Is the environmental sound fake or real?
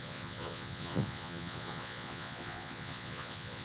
fake